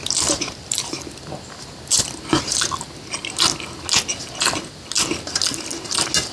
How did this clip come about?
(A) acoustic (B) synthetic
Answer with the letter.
A